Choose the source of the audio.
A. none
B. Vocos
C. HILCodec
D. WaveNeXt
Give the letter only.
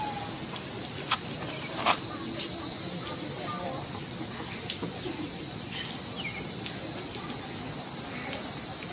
A